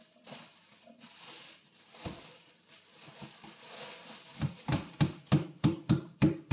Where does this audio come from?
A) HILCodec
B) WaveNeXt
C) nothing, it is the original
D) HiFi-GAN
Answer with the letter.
C